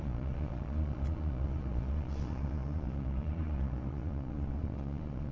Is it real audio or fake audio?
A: fake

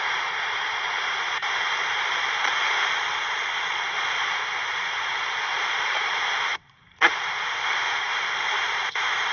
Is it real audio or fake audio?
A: fake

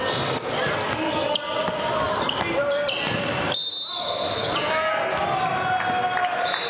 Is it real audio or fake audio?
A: real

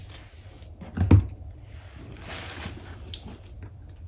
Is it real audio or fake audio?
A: real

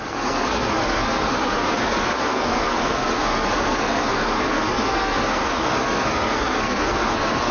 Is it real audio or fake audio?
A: fake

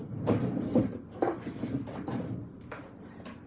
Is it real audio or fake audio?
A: real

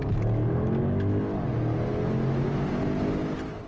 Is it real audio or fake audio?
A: real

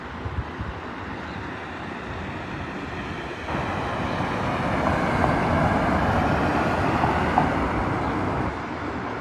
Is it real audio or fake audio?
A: real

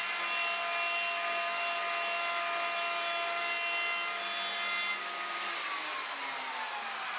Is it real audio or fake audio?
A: real